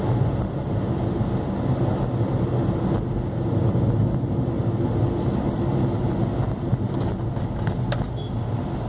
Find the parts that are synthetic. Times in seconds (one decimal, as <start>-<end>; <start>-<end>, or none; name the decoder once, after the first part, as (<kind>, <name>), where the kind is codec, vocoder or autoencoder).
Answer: 6.7-7.3 (vocoder, BigVGAN v2)